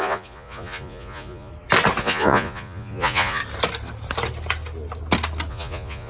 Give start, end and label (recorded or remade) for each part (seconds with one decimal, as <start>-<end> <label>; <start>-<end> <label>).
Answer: 0.0-1.5 remade; 1.5-2.0 recorded; 2.0-3.4 remade; 3.4-5.5 recorded; 5.5-6.1 remade